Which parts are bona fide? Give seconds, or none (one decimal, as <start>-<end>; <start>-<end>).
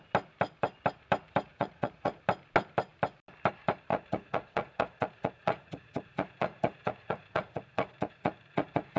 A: 0.0-1.5; 2.2-3.9